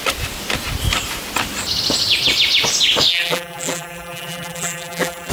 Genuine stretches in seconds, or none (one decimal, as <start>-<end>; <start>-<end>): 0.0-3.1